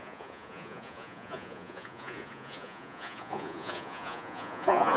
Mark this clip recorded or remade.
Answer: remade